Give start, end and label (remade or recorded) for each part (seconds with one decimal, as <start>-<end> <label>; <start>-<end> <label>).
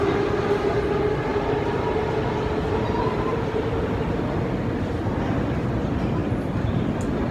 0.0-1.3 recorded; 1.3-5.1 remade; 5.1-6.2 recorded; 6.2-6.7 remade; 6.7-7.3 recorded